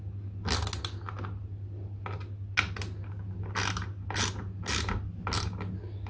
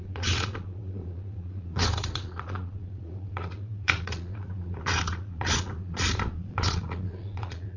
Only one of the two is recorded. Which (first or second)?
first